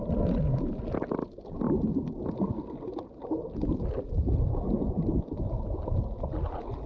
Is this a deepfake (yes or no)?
no